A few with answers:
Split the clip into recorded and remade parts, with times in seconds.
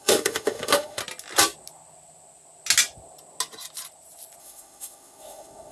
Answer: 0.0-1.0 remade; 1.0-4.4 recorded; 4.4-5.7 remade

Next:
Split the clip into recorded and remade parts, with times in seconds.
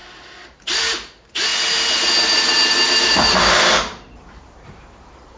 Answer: 0.0-1.5 remade; 1.5-3.0 recorded; 3.0-5.4 remade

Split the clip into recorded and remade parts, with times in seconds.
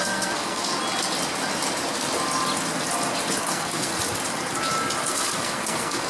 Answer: 0.0-0.7 remade; 0.7-3.4 recorded; 3.4-3.9 remade; 3.9-5.1 recorded; 5.1-6.1 remade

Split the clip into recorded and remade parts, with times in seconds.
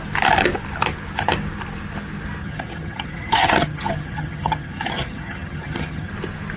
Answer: 0.0-2.4 recorded; 2.4-6.1 remade; 6.1-6.6 recorded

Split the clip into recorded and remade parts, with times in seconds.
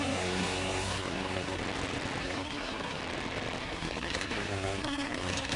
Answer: 0.0-1.6 remade; 1.6-2.2 recorded; 2.2-3.0 remade; 3.0-3.6 recorded; 3.6-5.6 remade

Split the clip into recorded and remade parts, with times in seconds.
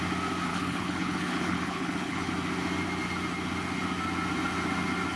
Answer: 0.0-0.5 recorded; 0.5-2.3 remade; 2.3-5.2 recorded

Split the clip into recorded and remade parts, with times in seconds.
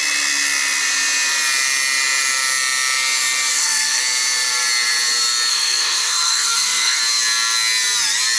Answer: 0.0-3.5 recorded; 3.5-4.0 remade; 4.0-5.5 recorded; 5.5-7.0 remade; 7.0-8.4 recorded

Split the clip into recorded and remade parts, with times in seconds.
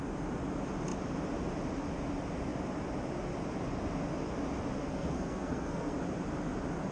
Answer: 0.0-4.8 recorded; 4.8-6.0 remade; 6.0-6.9 recorded